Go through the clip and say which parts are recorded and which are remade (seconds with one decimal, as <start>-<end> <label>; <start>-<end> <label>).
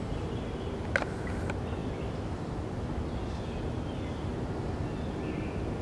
0.0-5.8 recorded